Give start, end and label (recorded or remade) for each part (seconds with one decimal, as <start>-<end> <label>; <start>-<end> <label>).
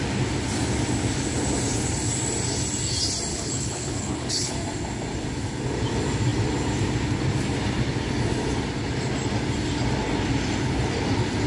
0.0-3.3 recorded; 3.3-4.5 remade; 4.5-11.5 recorded